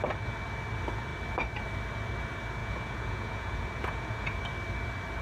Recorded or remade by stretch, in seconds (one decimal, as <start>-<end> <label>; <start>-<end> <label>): 0.0-2.6 recorded; 2.6-4.4 remade; 4.4-5.2 recorded